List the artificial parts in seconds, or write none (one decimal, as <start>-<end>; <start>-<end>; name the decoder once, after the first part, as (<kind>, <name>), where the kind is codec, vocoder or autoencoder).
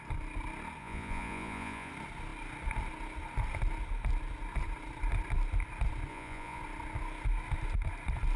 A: 0.8-1.9 (vocoder, Vocos); 6.1-6.6